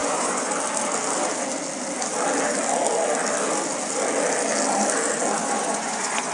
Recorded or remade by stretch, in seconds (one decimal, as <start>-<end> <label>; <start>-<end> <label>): 0.0-0.5 remade; 0.5-5.4 recorded; 5.4-6.3 remade